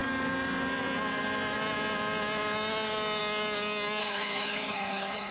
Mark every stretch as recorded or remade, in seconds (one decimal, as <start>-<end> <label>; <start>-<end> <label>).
0.0-4.0 recorded; 4.0-5.3 remade